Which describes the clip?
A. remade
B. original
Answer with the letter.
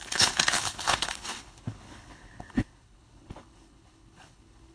A